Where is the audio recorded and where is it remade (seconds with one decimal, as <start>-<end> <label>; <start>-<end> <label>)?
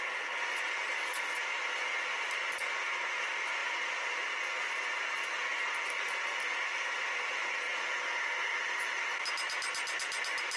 0.0-10.6 recorded